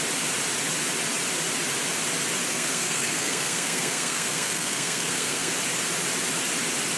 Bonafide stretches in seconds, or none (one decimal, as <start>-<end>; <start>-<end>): 0.0-2.5; 5.5-7.0